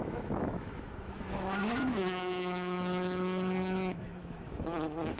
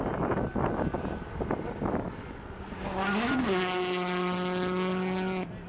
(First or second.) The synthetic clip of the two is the first